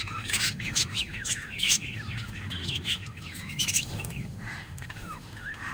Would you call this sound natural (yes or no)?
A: no